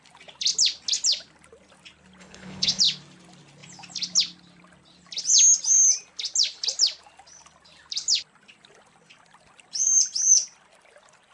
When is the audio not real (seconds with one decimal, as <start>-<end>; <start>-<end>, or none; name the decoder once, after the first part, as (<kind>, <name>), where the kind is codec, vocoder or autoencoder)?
2.2-2.8 (codec, HILCodec)